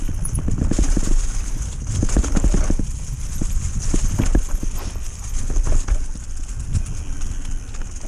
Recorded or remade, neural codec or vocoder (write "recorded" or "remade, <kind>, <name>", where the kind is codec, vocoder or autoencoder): recorded